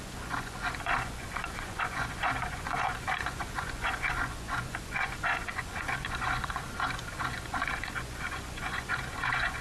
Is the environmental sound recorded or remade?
remade